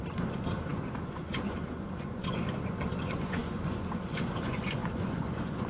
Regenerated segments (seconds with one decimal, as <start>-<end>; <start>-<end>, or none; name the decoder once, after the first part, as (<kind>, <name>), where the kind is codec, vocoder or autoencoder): 0.0-5.7 (vocoder, Vocos)